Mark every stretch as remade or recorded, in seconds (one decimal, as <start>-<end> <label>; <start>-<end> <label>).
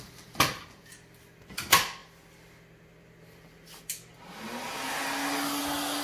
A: 0.0-6.0 recorded